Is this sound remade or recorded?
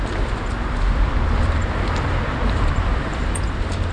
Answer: remade